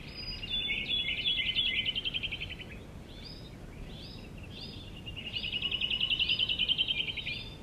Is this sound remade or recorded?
recorded